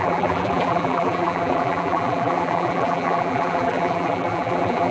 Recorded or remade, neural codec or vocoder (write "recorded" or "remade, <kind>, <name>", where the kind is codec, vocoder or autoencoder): remade, vocoder, BigVGAN v2